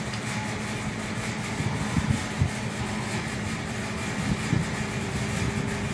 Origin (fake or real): real